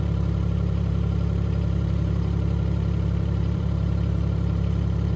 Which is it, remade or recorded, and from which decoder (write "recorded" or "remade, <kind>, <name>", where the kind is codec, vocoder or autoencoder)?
remade, vocoder, BigVGAN v2